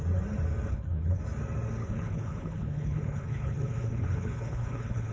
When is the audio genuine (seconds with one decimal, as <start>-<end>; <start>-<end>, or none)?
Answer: 0.0-0.7; 1.2-1.8